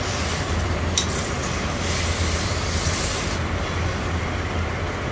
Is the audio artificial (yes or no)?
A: no